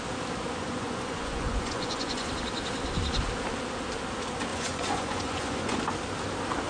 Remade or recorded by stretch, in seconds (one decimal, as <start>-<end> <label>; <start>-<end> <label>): 0.0-0.6 recorded; 0.6-2.3 remade; 2.3-4.5 recorded; 4.5-5.8 remade; 5.8-6.7 recorded